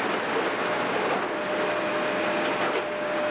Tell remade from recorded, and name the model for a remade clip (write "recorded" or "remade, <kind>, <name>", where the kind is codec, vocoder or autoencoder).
recorded